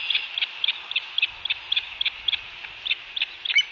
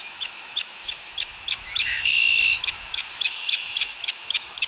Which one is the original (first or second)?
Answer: first